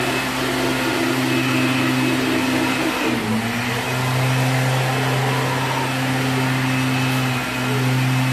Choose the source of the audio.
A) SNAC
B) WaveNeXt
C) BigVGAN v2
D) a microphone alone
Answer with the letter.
D